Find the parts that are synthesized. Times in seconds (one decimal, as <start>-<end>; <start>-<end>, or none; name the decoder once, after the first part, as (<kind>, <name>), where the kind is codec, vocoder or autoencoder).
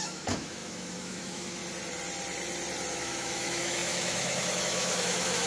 0.0-1.6 (autoencoder, DAC-VAE); 2.9-5.5